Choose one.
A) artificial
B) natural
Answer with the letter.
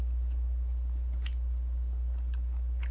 B